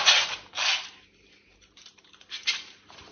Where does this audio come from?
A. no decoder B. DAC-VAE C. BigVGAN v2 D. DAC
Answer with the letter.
C